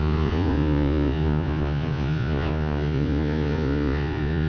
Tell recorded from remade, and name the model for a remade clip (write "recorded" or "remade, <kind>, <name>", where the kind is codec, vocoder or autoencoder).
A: remade, vocoder, Vocos